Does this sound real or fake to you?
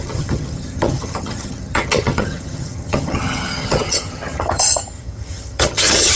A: fake